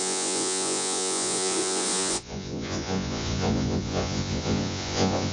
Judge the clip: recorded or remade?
remade